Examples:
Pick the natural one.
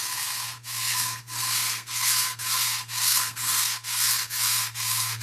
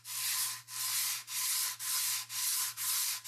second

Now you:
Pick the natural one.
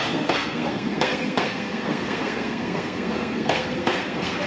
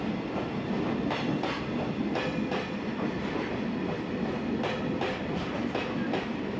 second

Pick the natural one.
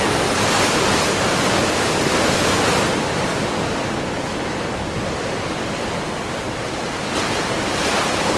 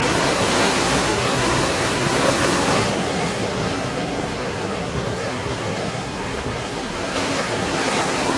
first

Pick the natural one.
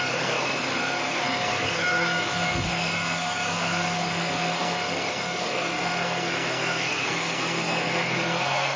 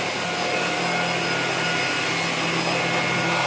second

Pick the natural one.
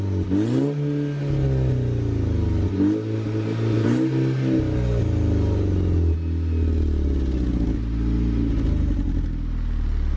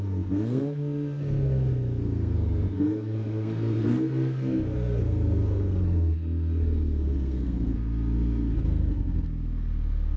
first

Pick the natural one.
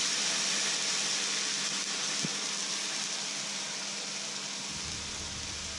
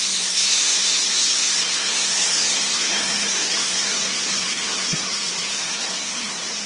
first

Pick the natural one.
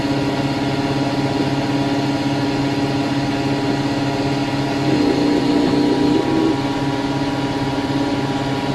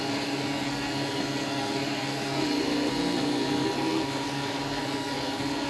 first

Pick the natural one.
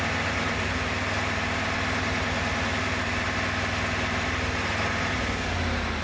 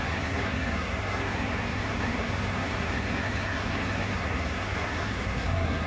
first